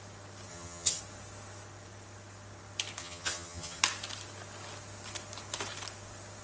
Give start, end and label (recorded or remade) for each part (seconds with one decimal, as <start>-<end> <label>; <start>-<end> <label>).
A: 0.0-0.5 recorded; 0.5-1.0 remade; 1.0-3.0 recorded; 3.0-3.8 remade; 3.8-6.4 recorded